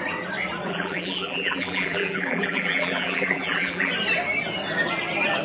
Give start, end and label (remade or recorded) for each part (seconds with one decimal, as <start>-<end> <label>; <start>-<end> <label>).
0.0-0.7 recorded; 0.7-3.9 remade; 3.9-5.4 recorded